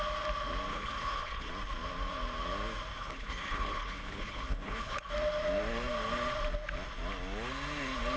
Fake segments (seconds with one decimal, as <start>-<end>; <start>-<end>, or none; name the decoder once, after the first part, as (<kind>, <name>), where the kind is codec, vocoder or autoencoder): 0.7-1.5 (codec, HILCodec); 3.0-5.1